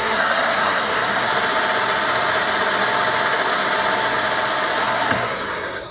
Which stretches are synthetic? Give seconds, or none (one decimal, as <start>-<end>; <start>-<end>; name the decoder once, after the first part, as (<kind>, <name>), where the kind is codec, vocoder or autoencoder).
0.0-1.3 (codec, SNAC); 4.8-5.9